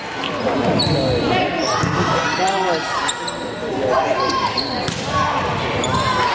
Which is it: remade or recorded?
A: recorded